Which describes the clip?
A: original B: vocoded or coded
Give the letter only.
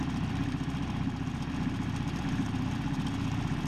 A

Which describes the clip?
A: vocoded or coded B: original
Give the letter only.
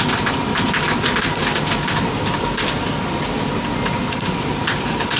B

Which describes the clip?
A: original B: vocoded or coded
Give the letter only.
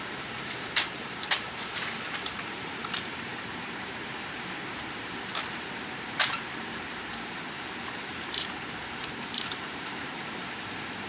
B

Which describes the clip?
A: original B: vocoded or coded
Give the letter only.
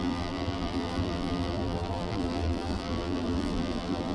B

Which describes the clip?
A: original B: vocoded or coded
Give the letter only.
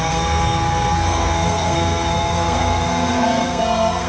B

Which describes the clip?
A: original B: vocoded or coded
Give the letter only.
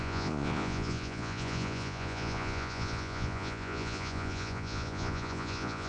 B